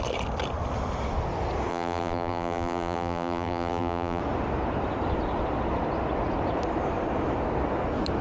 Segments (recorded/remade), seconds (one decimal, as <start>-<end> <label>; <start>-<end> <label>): 0.0-1.7 recorded; 1.7-4.2 remade; 4.2-8.2 recorded